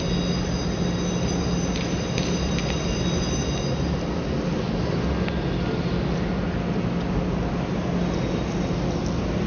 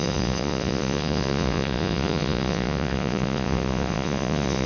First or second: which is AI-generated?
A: second